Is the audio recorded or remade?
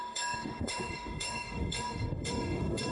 remade